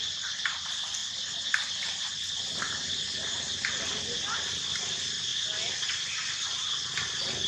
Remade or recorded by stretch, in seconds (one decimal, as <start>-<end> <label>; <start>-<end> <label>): 0.0-7.5 recorded